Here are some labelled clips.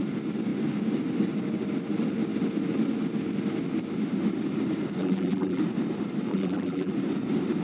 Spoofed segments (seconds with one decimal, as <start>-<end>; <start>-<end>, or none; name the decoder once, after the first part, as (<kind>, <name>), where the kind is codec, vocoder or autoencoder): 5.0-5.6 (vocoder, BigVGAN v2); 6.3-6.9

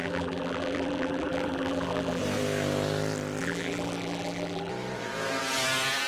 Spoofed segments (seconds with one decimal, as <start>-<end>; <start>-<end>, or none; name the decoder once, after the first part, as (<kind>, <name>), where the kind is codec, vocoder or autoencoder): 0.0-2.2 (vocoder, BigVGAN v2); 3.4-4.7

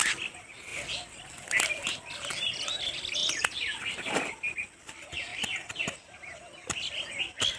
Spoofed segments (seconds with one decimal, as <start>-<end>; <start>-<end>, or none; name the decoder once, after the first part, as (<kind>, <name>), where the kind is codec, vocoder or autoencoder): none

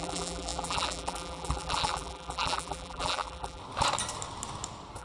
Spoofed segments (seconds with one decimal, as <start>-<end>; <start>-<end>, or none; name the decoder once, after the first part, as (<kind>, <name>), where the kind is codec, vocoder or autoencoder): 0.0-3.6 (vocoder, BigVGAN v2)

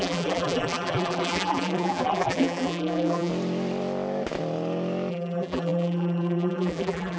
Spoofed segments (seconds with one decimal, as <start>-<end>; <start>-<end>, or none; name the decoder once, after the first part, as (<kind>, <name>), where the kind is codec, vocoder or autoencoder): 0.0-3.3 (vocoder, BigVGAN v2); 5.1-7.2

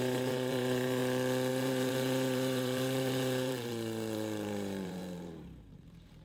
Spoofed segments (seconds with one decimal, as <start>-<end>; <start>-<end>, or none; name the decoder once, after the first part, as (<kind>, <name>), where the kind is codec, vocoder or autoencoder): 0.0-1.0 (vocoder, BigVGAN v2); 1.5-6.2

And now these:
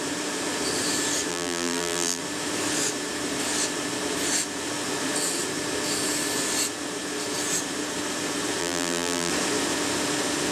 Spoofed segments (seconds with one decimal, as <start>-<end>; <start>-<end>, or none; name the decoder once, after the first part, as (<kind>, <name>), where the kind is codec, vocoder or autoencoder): 1.3-2.2 (vocoder, BigVGAN v2); 8.6-9.3

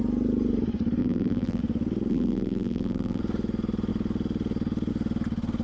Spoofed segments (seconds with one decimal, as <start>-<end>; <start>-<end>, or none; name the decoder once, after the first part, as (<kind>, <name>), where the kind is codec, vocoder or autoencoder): 1.0-1.6 (vocoder, BigVGAN v2); 2.1-3.2